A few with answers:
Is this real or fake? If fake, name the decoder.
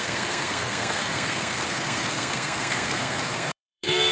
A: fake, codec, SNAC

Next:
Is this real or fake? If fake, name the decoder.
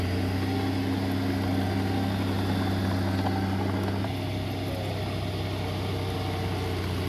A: real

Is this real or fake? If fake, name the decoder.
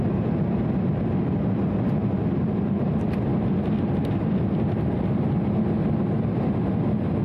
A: real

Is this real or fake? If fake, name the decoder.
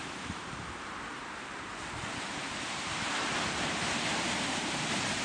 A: fake, vocoder, BigVGAN v2